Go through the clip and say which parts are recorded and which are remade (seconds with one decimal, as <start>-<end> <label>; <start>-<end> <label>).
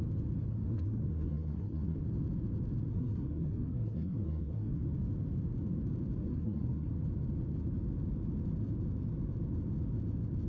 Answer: 0.0-0.5 recorded; 0.5-2.0 remade; 2.0-2.9 recorded; 2.9-4.8 remade; 4.8-6.3 recorded; 6.3-6.9 remade; 6.9-10.5 recorded